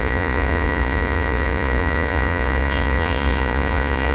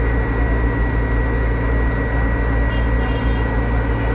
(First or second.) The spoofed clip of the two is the first